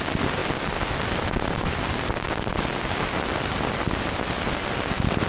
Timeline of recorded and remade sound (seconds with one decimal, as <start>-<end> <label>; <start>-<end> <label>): 0.0-5.3 recorded